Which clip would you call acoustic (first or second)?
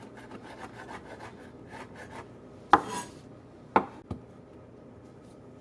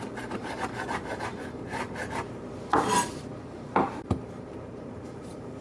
first